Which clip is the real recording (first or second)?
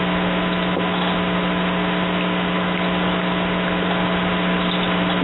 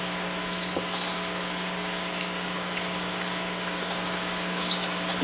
first